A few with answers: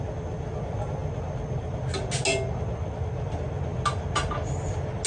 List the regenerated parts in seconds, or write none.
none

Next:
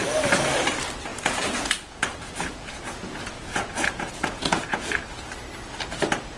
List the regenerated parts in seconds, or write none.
1.1-4.9 (vocoder, Vocos)